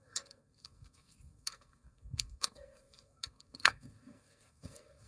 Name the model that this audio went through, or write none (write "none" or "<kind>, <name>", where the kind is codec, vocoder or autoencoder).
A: codec, SNAC